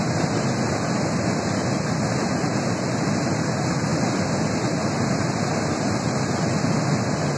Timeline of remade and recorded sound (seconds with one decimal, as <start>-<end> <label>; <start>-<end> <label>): 0.0-7.4 recorded